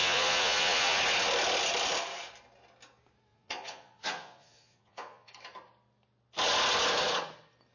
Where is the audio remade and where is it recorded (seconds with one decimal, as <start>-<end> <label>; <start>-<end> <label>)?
0.0-1.0 remade; 1.0-3.3 recorded; 3.3-5.3 remade; 5.3-7.7 recorded